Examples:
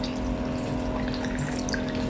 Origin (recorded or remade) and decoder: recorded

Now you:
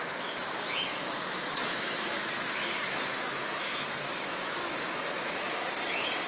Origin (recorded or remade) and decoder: remade, autoencoder, DAC-VAE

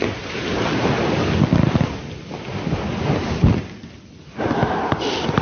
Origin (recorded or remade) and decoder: recorded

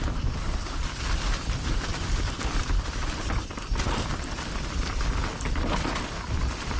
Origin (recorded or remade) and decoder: recorded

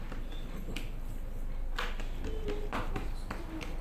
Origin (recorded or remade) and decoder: recorded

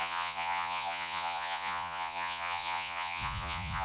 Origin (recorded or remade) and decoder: remade, vocoder, Vocos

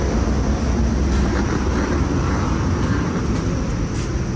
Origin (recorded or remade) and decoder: recorded